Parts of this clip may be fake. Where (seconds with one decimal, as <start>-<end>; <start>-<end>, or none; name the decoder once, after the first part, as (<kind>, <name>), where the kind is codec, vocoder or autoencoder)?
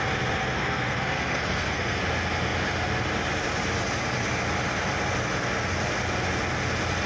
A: 0.4-2.0 (codec, SNAC)